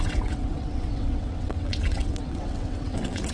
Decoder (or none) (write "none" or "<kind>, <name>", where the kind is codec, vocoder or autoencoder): vocoder, WaveNeXt